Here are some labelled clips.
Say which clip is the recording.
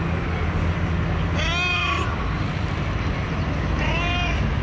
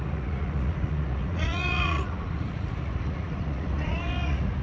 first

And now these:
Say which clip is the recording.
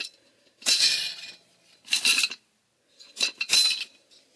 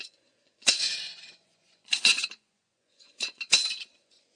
first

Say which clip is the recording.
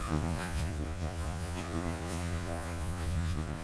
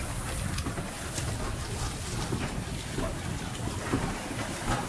second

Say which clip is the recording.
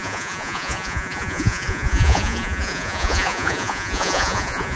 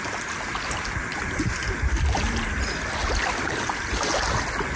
second